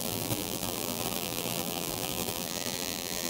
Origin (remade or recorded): remade